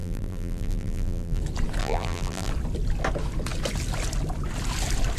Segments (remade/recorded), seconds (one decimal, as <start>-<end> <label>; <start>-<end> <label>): 0.0-1.4 remade; 1.4-1.8 recorded; 1.8-2.5 remade; 2.5-5.2 recorded